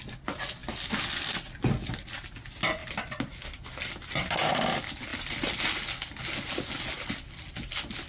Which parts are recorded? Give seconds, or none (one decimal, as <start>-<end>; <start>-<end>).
0.0-5.1; 5.8-8.1